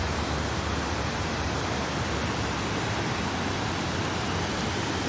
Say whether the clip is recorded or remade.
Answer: recorded